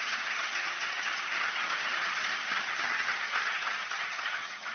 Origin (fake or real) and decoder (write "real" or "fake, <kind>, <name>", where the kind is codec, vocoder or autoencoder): fake, vocoder, HiFi-GAN